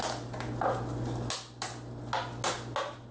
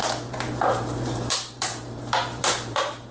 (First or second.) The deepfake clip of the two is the second